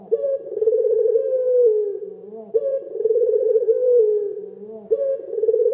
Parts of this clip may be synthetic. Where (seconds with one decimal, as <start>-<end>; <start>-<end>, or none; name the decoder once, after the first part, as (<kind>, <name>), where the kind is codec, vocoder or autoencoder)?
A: 0.0-1.2 (vocoder, BigVGAN v2); 2.2-5.7